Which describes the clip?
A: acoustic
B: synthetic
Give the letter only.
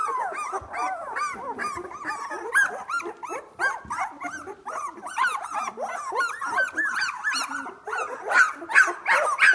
A